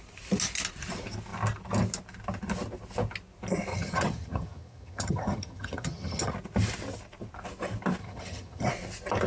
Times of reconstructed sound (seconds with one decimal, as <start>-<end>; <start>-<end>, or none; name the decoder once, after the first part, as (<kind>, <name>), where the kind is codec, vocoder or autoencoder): 3.7-6.3 (vocoder, HiFi-GAN); 8.0-8.7

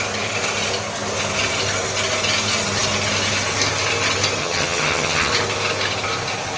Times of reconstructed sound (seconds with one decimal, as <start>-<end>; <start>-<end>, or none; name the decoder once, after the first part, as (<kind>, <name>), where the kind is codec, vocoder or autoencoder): 4.4-5.3 (vocoder, HiFi-GAN)

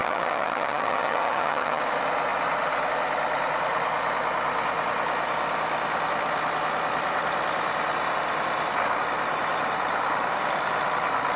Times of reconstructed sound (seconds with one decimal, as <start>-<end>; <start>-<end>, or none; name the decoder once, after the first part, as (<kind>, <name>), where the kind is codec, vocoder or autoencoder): 0.0-1.8 (vocoder, HiFi-GAN)

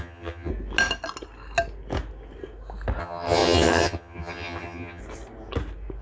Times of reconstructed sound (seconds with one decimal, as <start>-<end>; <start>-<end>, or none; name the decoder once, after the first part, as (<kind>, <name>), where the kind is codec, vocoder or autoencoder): 0.0-0.5 (vocoder, HiFi-GAN); 3.0-5.0

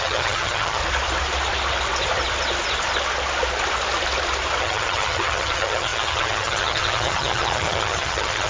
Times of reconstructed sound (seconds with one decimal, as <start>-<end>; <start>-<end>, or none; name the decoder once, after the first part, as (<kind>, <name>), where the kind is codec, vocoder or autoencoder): 0.0-0.8 (vocoder, HiFi-GAN); 4.6-8.5

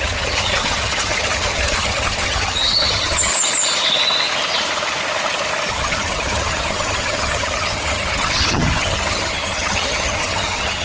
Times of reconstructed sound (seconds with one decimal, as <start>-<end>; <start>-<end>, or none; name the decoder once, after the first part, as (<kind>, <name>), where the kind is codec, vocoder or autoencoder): 0.0-3.3 (vocoder, HiFi-GAN); 5.7-10.8

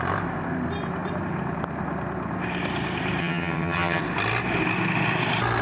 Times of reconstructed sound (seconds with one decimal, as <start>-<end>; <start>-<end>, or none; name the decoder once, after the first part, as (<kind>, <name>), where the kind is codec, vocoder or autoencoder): 3.2-4.0 (vocoder, HiFi-GAN)

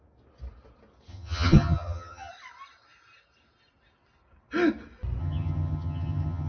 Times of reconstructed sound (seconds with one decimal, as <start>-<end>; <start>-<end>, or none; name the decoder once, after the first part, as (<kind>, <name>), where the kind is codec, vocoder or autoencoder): 1.1-2.3 (vocoder, HiFi-GAN); 5.2-6.5